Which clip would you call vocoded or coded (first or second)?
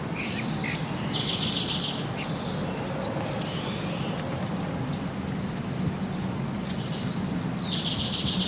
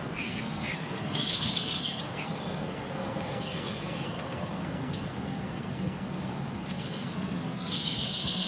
second